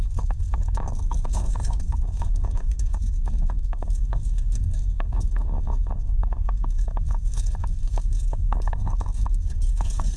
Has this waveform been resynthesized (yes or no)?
yes